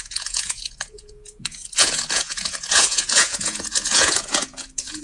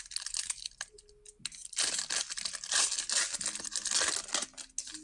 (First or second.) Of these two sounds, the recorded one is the second